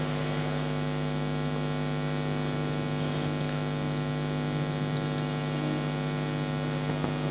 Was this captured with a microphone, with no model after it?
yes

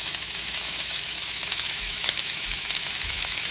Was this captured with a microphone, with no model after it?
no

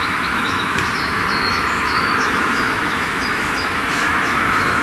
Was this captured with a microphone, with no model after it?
no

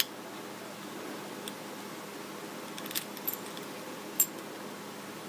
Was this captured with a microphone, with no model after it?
yes